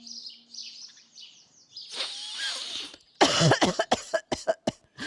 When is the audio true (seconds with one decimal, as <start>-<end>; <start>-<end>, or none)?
0.0-5.1